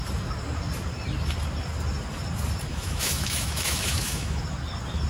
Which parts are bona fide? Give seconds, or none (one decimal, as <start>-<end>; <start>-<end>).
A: 0.0-2.7; 4.4-5.1